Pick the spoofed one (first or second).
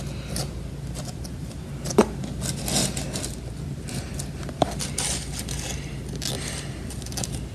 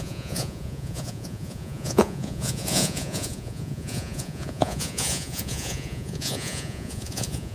second